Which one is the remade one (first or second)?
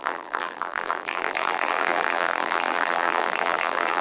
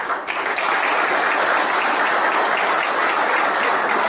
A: first